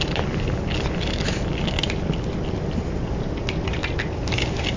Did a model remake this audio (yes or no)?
no